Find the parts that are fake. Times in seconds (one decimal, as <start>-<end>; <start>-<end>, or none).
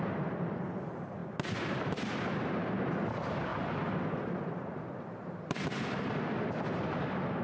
0.0-1.2; 2.9-3.5; 4.5-7.4